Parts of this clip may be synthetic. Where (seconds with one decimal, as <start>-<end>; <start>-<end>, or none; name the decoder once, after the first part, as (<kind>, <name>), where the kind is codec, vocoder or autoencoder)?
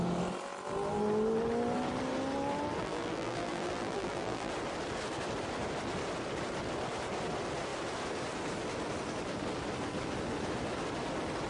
2.8-4.5 (vocoder, BigVGAN v2)